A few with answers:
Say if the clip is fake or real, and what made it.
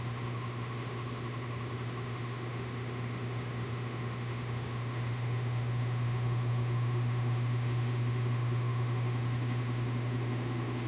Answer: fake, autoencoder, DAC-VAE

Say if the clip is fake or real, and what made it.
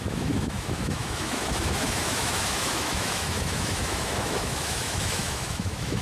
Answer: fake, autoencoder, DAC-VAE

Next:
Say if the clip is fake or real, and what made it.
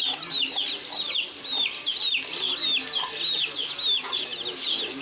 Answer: real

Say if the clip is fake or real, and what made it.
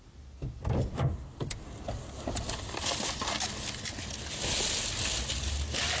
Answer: real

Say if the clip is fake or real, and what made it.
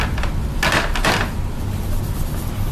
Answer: real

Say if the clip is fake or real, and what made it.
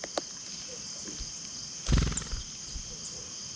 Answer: real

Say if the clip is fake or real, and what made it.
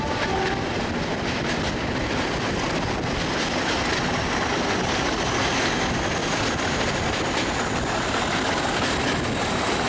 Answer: real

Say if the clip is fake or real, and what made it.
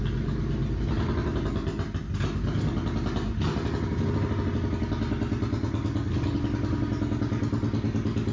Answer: real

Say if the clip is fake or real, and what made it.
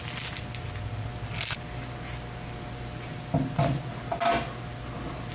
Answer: real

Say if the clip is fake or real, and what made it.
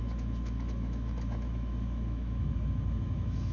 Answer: fake, autoencoder, DAC-VAE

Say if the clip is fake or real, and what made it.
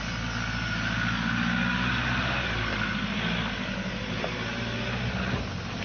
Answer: real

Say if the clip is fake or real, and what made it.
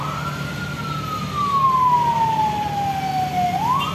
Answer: real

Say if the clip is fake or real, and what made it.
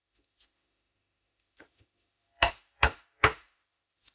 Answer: fake, autoencoder, DAC-VAE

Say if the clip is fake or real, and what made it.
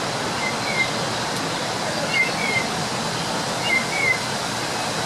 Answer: real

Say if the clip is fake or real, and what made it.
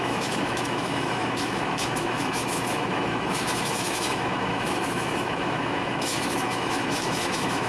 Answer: fake, autoencoder, DAC-VAE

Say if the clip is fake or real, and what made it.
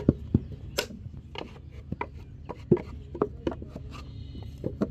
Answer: real